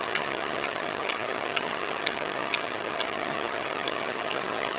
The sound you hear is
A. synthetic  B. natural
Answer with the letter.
A